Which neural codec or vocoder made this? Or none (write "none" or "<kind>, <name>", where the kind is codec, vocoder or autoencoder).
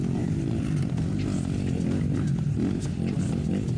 none